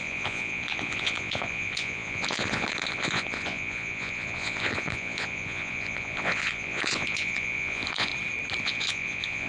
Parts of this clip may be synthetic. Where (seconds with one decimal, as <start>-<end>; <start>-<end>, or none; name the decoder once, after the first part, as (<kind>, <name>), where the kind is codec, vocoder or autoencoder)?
0.0-8.1 (vocoder, Vocos); 8.6-9.5